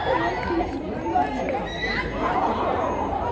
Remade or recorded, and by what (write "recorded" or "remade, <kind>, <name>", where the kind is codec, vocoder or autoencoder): recorded